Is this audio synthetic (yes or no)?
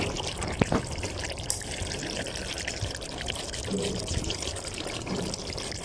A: yes